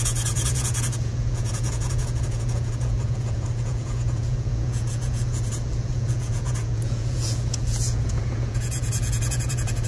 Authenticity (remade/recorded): remade